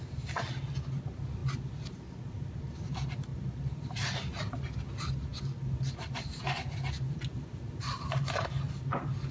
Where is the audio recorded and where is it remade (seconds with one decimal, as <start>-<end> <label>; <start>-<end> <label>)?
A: 0.0-9.3 recorded